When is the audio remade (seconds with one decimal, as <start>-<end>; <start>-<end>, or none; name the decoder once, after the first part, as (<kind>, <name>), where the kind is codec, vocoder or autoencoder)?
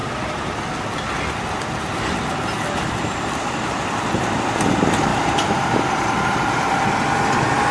5.1-6.7 (vocoder, BigVGAN v2)